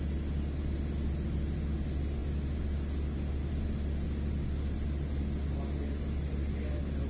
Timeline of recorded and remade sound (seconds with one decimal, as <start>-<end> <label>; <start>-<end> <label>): 0.0-7.1 recorded